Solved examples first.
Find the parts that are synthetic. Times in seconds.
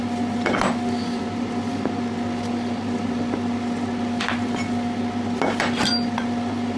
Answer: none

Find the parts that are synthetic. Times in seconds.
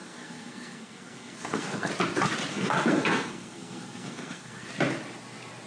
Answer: 0.0-1.9 (codec, SNAC); 2.5-4.7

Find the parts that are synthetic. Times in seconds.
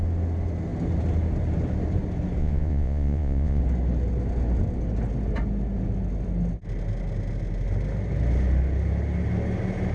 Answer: 2.4-3.6 (vocoder, Vocos)